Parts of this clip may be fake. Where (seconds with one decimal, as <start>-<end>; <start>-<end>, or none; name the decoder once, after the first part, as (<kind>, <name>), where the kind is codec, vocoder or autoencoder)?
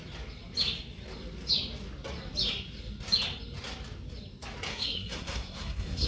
4.7-6.1 (codec, SNAC)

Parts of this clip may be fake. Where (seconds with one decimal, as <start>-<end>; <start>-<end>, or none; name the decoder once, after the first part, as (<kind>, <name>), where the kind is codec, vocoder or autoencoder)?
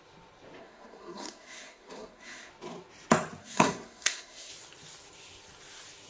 0.6-2.5 (codec, SNAC); 3.4-4.5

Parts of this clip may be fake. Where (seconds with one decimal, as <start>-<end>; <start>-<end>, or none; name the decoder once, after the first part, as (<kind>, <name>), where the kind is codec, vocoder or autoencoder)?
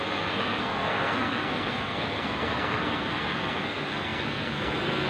0.0-5.1 (codec, SNAC)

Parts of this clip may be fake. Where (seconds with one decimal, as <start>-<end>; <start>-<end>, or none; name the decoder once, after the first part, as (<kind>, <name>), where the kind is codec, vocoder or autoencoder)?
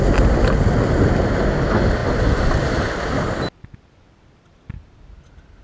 none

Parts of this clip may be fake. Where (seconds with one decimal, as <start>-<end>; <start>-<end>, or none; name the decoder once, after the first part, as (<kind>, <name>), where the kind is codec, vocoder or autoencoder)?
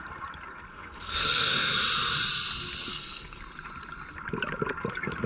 0.7-1.7 (codec, SNAC); 2.9-3.4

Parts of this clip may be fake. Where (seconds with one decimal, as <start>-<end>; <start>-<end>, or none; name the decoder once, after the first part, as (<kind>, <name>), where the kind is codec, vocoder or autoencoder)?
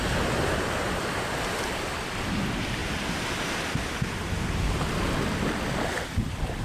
none